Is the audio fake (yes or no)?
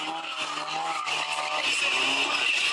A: no